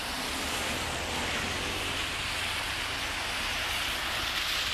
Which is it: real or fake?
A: real